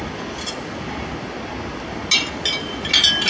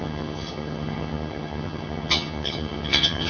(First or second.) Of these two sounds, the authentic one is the first